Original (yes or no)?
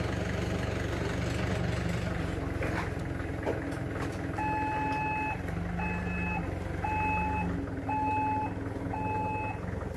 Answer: yes